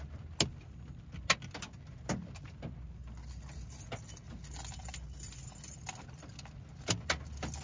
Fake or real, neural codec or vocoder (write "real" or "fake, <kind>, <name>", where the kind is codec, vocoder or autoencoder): real